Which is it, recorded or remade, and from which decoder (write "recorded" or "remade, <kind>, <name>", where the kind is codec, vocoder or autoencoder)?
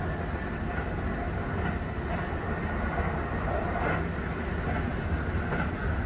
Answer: recorded